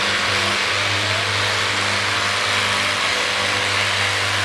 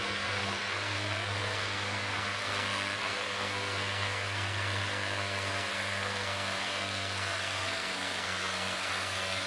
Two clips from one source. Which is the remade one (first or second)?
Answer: second